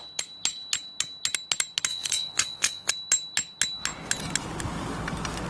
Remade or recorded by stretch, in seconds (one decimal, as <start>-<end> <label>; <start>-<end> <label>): 0.0-1.9 recorded; 1.9-2.9 remade; 2.9-5.5 recorded